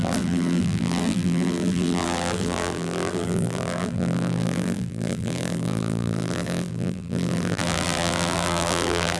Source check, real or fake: fake